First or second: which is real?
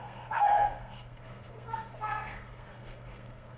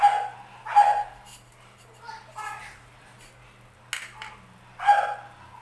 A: second